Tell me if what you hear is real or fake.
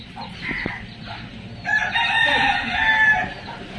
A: real